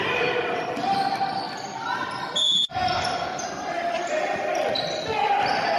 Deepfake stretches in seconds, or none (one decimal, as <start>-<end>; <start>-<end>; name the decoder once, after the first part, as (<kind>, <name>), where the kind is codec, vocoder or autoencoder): 2.6-5.8 (vocoder, BigVGAN v2)